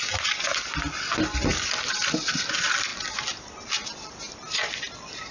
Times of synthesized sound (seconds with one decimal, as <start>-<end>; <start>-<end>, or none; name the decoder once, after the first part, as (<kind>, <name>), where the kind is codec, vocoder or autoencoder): none